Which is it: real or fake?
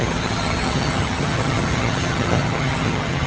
fake